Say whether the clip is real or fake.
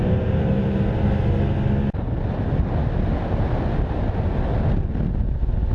real